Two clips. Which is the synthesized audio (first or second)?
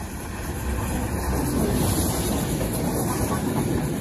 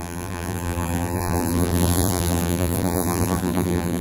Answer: second